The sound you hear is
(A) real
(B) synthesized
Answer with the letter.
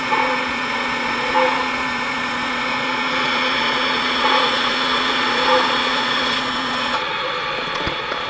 B